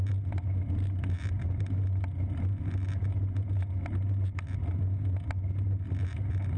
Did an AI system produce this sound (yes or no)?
no